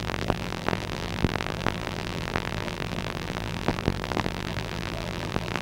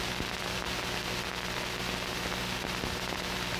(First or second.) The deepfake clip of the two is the first